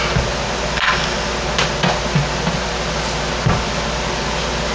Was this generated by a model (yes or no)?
no